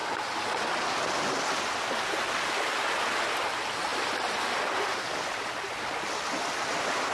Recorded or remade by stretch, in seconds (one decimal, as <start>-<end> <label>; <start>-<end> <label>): 0.0-7.1 recorded